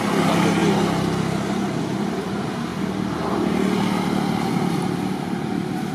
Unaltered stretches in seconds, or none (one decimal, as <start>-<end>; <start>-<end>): 0.6-1.8